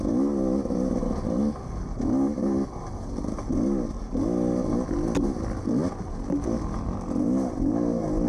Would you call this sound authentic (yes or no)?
yes